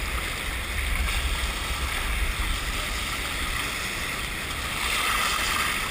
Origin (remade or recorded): recorded